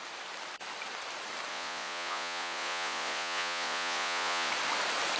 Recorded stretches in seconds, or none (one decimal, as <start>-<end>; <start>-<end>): 0.0-1.5; 4.5-5.2